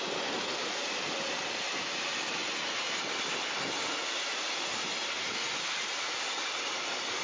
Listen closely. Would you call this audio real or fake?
real